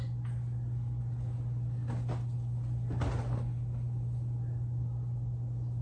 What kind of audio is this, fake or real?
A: real